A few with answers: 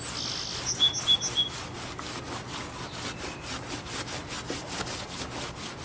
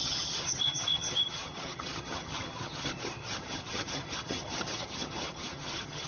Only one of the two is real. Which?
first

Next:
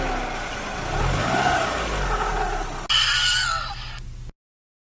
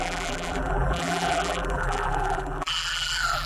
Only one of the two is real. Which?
first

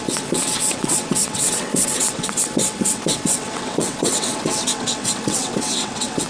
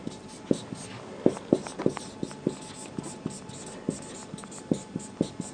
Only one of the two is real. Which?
second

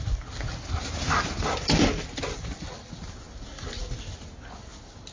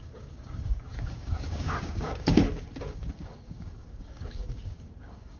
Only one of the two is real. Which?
first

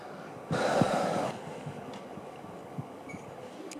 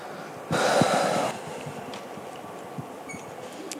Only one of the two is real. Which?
second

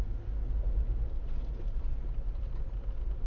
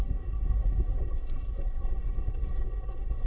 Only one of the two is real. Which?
first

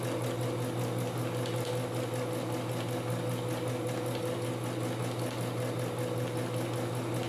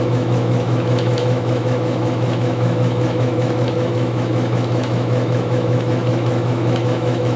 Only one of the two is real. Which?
first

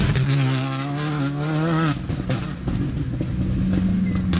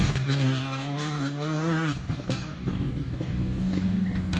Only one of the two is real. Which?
first